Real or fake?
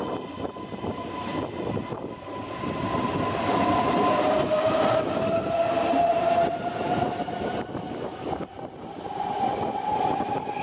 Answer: real